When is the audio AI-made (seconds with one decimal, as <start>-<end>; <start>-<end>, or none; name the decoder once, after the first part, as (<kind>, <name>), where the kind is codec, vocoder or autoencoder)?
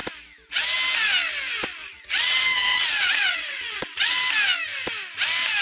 1.8-4.2 (vocoder, WaveNeXt)